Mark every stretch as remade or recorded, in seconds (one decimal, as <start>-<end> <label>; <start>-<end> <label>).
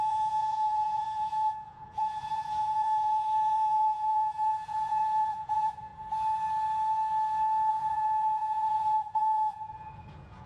0.0-5.9 remade; 5.9-7.7 recorded; 7.7-10.5 remade